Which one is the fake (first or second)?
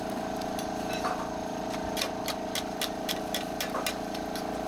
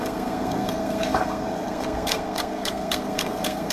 second